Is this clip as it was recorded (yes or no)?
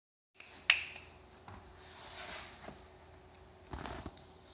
yes